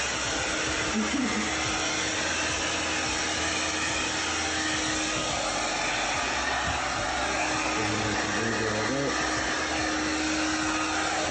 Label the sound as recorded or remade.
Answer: recorded